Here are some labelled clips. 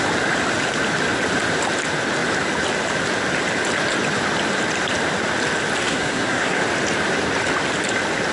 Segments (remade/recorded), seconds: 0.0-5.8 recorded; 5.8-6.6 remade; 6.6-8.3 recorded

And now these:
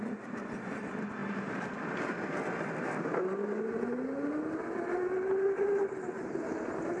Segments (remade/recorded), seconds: 0.0-7.0 recorded

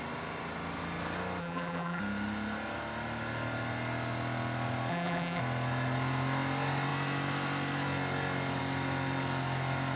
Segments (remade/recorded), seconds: 0.0-1.4 recorded; 1.4-2.0 remade; 2.0-4.9 recorded; 4.9-5.4 remade; 5.4-10.0 recorded

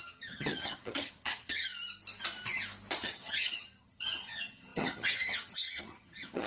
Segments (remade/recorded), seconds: 0.0-1.7 remade; 1.7-3.0 recorded; 3.0-6.5 remade

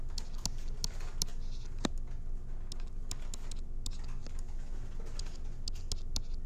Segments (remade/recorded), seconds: 0.0-6.5 recorded

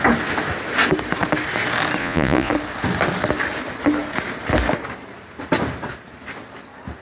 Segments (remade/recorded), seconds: 0.0-2.0 recorded; 2.0-2.5 remade; 2.5-7.0 recorded

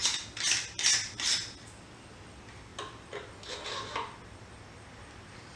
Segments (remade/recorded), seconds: 0.0-5.6 recorded